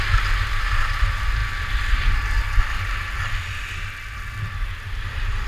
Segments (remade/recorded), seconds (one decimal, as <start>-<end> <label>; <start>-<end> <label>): 0.0-5.5 recorded